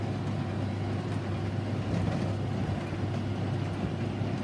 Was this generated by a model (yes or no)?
no